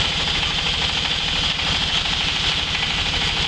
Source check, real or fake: real